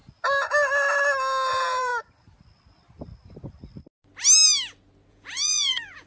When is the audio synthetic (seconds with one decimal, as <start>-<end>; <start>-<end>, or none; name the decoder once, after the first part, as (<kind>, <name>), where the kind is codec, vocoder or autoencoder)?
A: 1.5-1.9 (vocoder, Vocos); 5.1-6.1